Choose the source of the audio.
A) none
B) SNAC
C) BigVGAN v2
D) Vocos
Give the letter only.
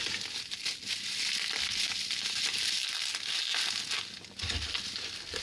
A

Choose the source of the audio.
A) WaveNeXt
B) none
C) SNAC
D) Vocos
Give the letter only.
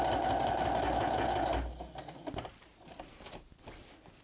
B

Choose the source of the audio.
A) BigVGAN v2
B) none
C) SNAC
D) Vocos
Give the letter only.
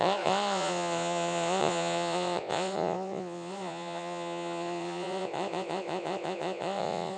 D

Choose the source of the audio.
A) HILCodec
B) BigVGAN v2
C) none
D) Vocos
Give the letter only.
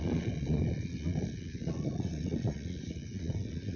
D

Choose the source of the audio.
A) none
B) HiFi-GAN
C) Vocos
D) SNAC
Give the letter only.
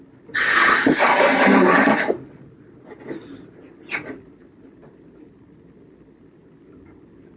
A